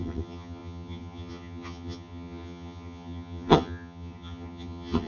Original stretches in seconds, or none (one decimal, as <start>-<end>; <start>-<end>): none

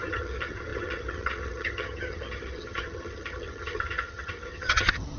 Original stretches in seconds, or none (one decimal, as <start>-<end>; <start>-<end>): none

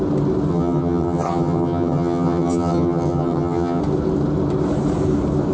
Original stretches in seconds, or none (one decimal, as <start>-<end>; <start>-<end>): 0.0-0.5; 3.8-5.5

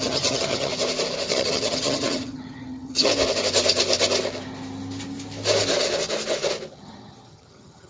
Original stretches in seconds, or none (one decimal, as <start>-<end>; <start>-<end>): 0.7-1.3; 3.1-6.7

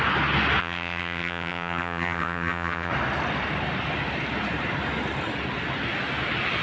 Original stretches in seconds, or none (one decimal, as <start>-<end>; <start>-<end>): 0.0-0.6; 2.9-6.6

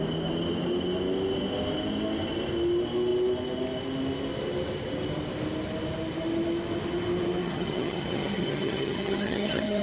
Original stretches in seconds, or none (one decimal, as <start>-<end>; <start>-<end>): 0.0-7.4

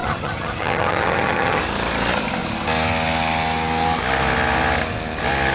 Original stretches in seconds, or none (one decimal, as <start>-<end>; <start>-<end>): 1.6-5.5

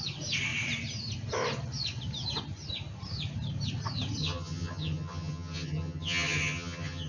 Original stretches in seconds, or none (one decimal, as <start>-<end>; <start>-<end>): 0.0-4.2